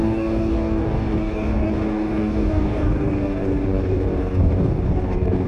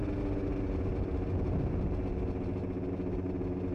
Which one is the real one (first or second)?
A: second